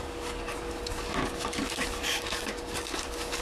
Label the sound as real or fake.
fake